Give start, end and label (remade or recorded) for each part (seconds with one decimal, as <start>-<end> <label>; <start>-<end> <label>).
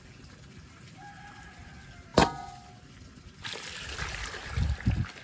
0.0-1.0 recorded; 1.0-1.7 remade; 1.7-5.2 recorded